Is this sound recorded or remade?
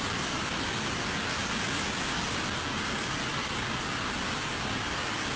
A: recorded